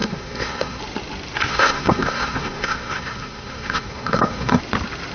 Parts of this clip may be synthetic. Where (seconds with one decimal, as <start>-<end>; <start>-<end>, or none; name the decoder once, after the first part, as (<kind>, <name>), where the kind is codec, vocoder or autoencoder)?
0.0-0.8 (codec, SNAC); 1.5-4.6